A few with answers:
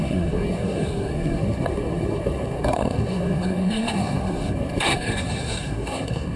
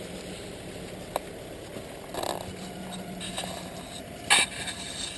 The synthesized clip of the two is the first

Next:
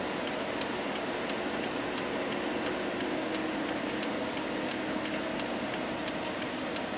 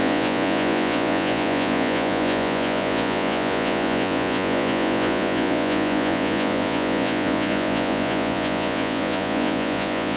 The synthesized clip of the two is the second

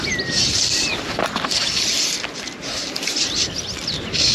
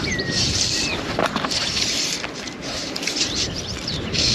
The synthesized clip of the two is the second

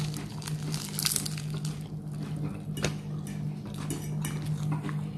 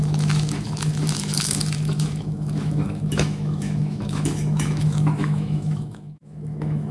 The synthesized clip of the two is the second